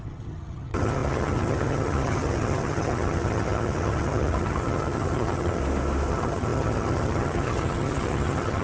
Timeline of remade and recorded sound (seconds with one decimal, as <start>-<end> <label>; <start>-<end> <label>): 0.0-5.6 remade; 5.6-6.1 recorded; 6.1-8.6 remade